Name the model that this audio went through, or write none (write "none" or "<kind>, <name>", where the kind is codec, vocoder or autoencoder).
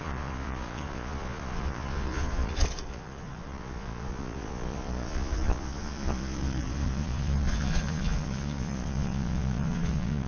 vocoder, Vocos